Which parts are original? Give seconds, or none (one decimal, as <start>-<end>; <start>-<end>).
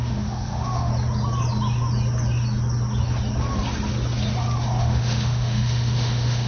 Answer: 0.9-4.8